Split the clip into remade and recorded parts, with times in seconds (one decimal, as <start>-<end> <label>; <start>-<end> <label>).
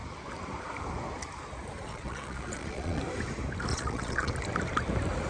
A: 0.0-1.9 recorded; 1.9-3.0 remade; 3.0-3.7 recorded; 3.7-4.3 remade; 4.3-5.3 recorded